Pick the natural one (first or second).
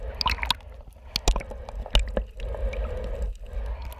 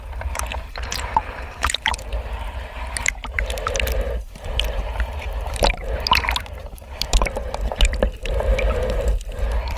first